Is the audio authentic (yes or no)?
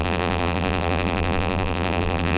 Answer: no